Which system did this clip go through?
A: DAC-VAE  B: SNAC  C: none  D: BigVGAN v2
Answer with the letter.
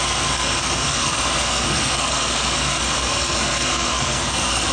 B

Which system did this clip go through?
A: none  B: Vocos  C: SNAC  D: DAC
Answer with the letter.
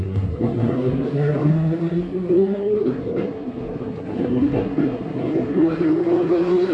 C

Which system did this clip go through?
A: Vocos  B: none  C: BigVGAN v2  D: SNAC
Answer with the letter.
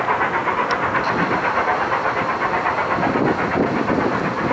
B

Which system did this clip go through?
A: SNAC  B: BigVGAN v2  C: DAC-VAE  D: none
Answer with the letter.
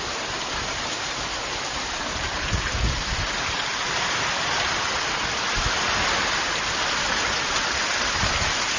D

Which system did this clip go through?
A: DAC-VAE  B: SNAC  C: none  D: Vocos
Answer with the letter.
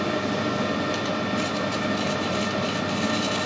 C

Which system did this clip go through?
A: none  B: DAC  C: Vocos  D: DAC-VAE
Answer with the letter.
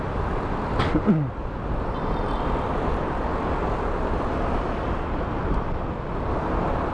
A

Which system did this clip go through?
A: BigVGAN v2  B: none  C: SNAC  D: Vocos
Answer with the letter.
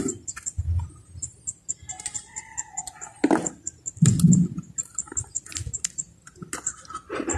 B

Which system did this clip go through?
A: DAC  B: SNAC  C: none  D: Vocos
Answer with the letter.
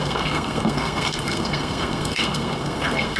B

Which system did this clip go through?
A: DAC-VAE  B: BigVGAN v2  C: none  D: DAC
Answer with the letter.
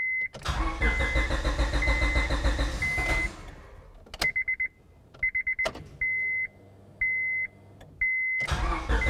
C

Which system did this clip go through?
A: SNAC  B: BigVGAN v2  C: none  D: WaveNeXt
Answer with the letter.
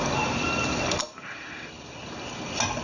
C